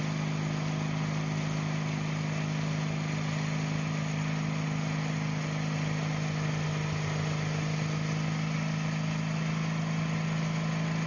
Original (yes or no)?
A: yes